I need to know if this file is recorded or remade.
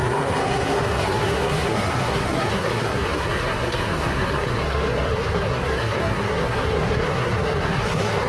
remade